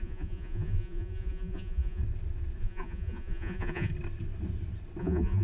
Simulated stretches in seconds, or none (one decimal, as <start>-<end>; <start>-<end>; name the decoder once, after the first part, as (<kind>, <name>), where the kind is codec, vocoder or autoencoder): 0.0-2.0 (vocoder, Vocos); 2.6-3.9; 5.0-5.4

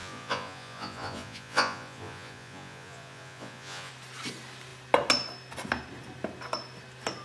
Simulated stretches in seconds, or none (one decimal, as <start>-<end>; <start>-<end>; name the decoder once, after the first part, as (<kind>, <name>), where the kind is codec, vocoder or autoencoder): 0.0-3.9 (vocoder, Vocos)

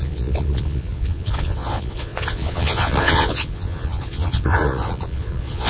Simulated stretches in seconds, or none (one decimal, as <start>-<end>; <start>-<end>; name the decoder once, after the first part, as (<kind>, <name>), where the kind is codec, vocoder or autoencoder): 0.0-5.7 (vocoder, Vocos)

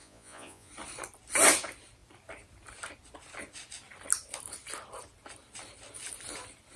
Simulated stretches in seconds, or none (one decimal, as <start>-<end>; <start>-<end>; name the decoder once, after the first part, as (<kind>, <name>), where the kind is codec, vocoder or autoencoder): 0.0-0.7 (vocoder, Vocos)

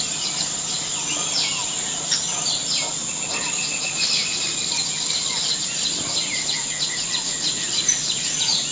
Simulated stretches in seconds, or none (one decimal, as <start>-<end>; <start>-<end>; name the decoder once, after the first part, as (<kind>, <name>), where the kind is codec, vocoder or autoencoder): 6.2-8.7 (vocoder, Vocos)

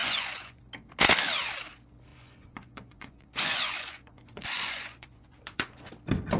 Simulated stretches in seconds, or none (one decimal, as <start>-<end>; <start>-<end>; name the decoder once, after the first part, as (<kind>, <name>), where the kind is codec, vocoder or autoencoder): 0.0-0.6 (vocoder, Vocos); 2.1-5.9